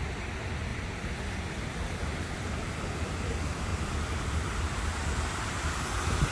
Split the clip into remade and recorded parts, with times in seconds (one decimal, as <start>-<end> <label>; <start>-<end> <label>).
0.0-0.7 recorded; 0.7-2.5 remade; 2.5-3.7 recorded; 3.7-5.5 remade; 5.5-6.3 recorded